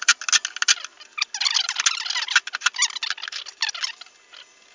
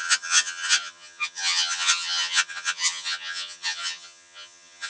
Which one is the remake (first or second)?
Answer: second